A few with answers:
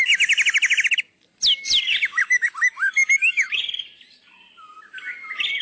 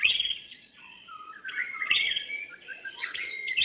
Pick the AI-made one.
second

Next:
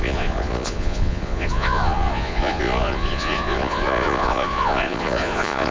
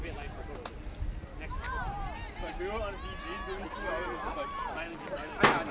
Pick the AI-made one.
first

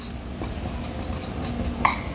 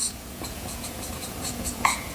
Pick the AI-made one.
second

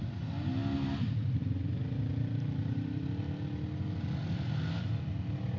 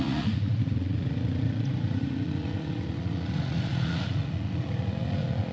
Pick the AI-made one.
second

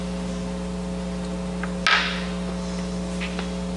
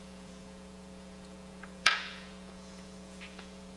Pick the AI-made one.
second